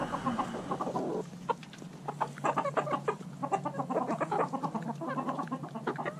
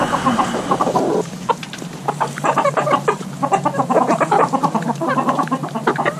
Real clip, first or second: first